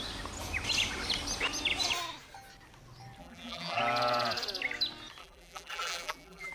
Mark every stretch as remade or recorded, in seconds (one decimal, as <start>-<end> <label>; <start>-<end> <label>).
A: 0.0-3.2 recorded; 3.2-3.8 remade; 3.8-5.2 recorded; 5.2-6.5 remade